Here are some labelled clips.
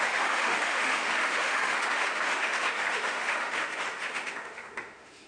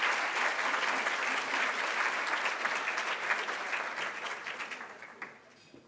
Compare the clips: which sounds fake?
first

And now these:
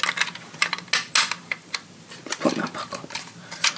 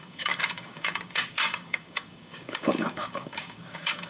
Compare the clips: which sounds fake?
second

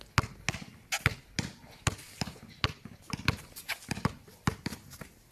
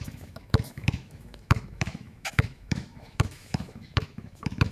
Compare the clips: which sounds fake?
second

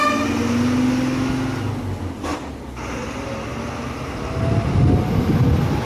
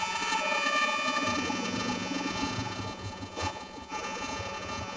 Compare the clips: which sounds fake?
second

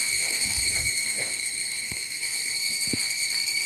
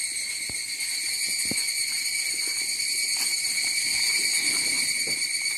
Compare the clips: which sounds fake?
first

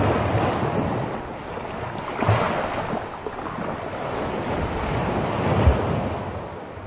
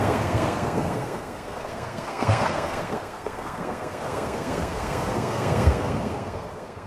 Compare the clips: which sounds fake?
second